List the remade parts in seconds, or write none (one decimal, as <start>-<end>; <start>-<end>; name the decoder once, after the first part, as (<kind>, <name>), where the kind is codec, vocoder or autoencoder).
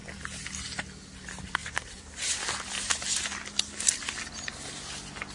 1.6-2.3 (vocoder, BigVGAN v2)